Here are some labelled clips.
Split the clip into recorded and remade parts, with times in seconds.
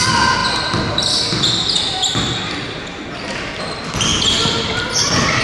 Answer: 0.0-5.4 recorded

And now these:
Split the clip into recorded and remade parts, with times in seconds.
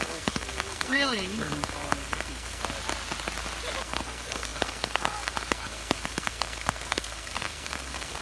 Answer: 0.0-2.6 remade; 2.6-3.8 recorded; 3.8-8.2 remade